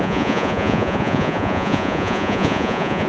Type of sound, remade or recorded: remade